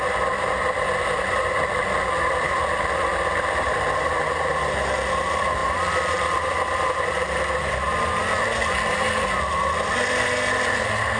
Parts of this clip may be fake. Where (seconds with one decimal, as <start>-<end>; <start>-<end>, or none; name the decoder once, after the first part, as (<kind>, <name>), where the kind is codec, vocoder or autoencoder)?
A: none